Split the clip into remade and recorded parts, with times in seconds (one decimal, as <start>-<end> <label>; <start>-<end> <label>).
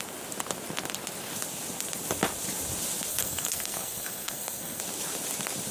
0.0-3.1 recorded; 3.1-4.8 remade; 4.8-5.7 recorded